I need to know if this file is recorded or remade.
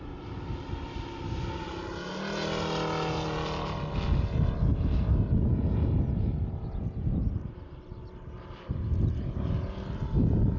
recorded